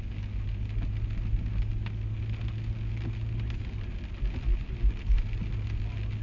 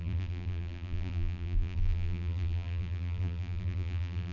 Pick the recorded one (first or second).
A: first